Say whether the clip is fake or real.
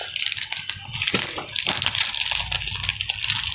real